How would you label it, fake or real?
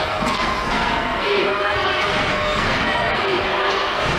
fake